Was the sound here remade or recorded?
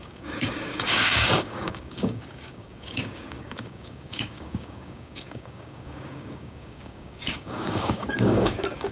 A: remade